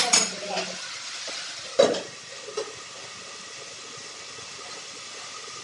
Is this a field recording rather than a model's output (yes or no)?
yes